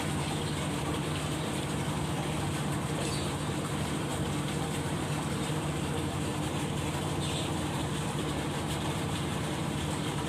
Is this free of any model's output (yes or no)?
no